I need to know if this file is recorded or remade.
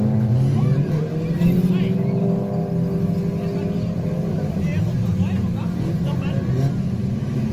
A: recorded